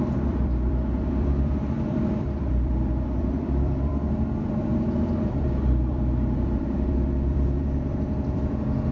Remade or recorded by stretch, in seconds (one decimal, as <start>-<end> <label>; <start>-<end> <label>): 0.0-3.9 remade; 3.9-4.4 recorded; 4.4-8.9 remade